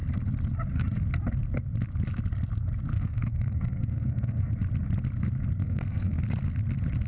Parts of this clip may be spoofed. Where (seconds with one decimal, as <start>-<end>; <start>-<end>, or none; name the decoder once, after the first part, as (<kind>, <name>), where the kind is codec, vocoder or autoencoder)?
2.9-4.5 (codec, SNAC); 5.6-6.2